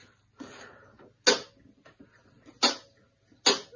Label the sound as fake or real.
real